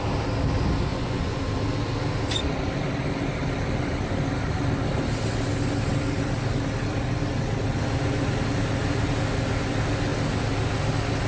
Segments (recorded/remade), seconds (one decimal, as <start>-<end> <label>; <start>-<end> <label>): 0.0-0.9 recorded; 0.9-1.4 remade; 1.4-11.3 recorded